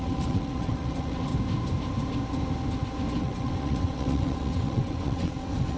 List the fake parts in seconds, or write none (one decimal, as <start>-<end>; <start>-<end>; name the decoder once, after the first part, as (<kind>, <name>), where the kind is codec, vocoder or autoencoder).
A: 0.0-1.3 (vocoder, WaveNeXt); 3.2-5.8